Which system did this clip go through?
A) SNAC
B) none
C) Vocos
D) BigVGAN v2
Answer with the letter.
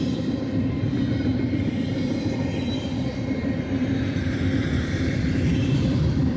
D